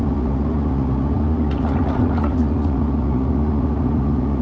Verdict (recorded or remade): remade